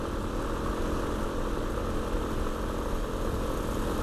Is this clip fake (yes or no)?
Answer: no